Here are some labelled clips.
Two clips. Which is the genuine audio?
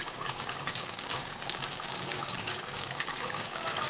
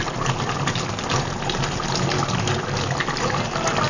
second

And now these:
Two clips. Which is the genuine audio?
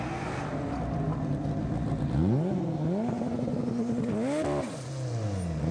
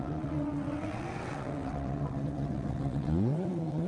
first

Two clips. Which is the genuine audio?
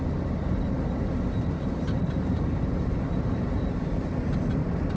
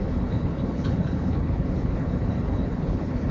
first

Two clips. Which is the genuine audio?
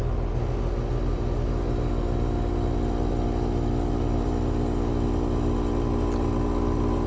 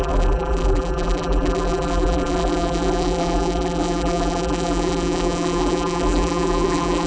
first